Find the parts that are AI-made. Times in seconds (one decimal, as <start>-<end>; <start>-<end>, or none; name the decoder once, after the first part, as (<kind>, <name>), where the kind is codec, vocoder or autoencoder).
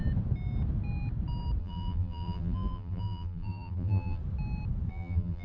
1.6-4.2 (vocoder, BigVGAN v2); 4.9-5.4